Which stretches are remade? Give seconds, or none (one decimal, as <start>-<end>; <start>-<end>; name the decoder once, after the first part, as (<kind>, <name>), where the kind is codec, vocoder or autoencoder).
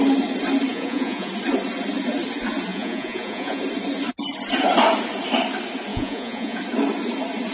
0.7-1.3 (vocoder, Vocos); 2.7-3.6; 5.9-6.6